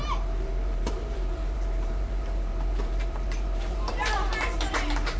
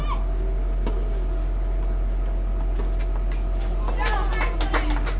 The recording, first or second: second